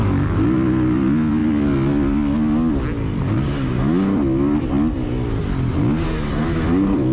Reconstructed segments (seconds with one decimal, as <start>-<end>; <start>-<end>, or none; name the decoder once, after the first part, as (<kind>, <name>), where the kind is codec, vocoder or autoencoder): none